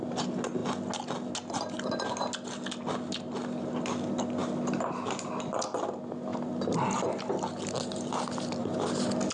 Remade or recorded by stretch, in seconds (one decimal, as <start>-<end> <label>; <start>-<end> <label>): 0.0-9.3 recorded